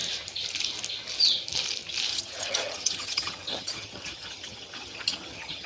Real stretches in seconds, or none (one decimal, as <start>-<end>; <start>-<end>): 0.0-2.1